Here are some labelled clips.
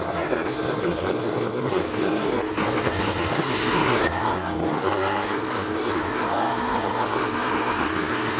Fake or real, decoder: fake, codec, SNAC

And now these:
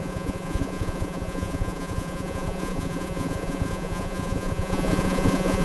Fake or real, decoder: fake, vocoder, Vocos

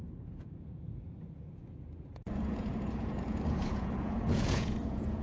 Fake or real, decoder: fake, vocoder, Vocos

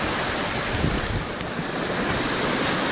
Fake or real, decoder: real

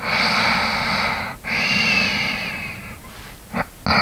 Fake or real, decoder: real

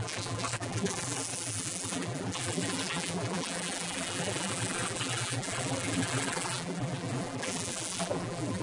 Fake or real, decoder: fake, vocoder, BigVGAN v2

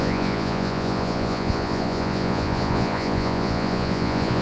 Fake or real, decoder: fake, vocoder, Vocos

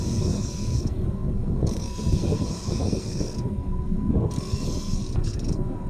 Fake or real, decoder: fake, codec, SNAC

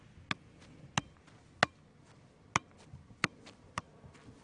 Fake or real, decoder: real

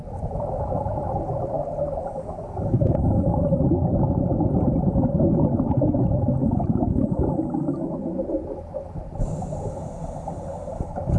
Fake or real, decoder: real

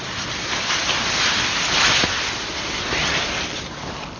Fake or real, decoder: real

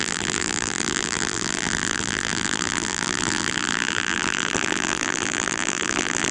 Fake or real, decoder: fake, vocoder, BigVGAN v2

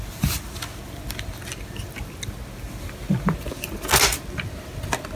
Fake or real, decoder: real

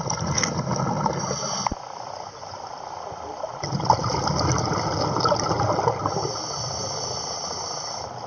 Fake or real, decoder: real